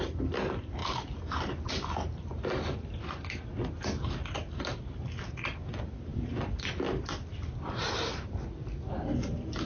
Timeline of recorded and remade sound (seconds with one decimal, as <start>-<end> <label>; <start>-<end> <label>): 0.0-0.8 recorded; 0.8-1.7 remade; 1.7-6.1 recorded; 6.1-8.8 remade; 8.8-9.7 recorded